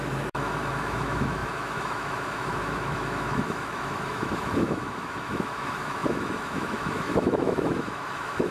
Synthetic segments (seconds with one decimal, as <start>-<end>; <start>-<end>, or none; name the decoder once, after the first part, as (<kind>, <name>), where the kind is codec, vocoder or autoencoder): 0.0-8.5 (autoencoder, DAC-VAE)

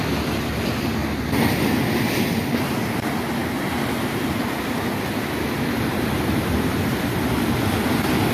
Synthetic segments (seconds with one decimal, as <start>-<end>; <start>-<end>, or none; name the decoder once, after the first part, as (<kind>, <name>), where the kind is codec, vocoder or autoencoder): none

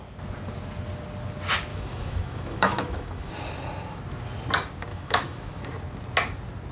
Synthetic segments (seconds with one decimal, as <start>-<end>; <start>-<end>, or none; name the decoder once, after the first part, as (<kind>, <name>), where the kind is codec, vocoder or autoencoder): 1.7-3.3 (autoencoder, DAC-VAE); 4.9-5.6

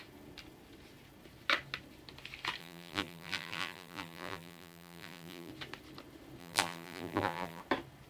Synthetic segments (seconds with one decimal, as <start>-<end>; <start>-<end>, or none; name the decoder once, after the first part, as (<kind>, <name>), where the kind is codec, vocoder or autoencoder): 2.6-5.5 (vocoder, BigVGAN v2); 6.4-7.6

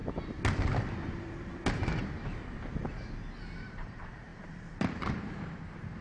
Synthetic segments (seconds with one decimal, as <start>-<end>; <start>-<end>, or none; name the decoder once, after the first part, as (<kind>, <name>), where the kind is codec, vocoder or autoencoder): 3.6-6.0 (vocoder, BigVGAN v2)

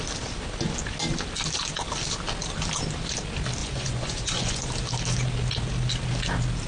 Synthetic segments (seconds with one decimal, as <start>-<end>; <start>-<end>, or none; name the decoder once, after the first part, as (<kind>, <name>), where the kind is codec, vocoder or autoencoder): 3.6-4.7 (vocoder, Vocos)

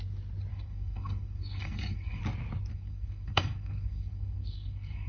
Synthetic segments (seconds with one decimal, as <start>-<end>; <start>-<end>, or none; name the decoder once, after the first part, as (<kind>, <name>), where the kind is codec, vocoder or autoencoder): 0.5-2.2 (codec, SNAC); 2.7-5.1